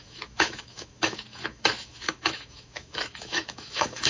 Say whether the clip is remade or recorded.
remade